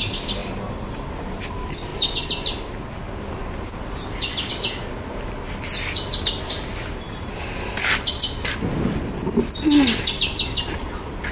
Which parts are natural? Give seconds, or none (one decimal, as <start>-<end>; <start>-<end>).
0.0-6.1; 7.7-11.3